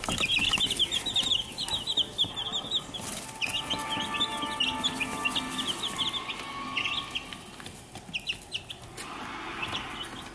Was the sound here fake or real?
real